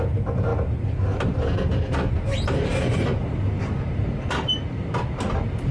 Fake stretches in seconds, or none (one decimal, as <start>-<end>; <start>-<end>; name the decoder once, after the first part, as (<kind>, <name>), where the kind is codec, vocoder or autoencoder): none